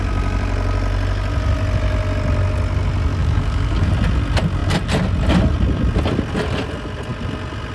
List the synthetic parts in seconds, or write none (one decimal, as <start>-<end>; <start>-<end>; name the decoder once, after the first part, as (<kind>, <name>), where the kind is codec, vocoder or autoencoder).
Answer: 3.2-3.9 (codec, DAC)